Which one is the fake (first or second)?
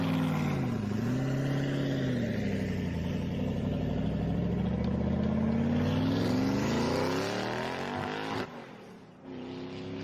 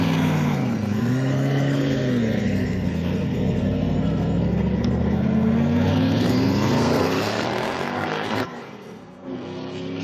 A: second